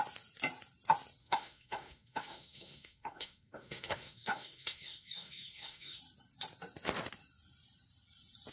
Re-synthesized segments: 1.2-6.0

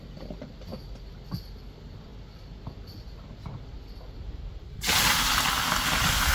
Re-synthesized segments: none

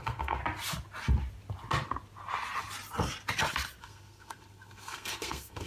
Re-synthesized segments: 0.0-0.4; 3.8-5.7

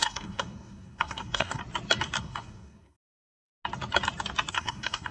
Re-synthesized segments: 0.0-1.6; 2.2-3.5; 4.5-5.1